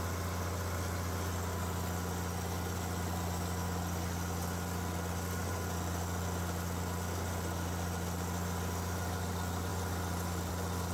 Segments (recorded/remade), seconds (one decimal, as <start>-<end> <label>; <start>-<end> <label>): 0.0-10.9 recorded